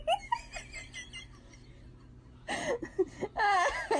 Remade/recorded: recorded